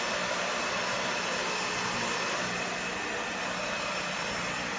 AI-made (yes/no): no